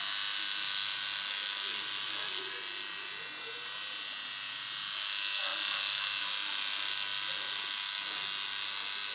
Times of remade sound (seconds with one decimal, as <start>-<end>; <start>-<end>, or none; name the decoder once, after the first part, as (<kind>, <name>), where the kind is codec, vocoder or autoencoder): none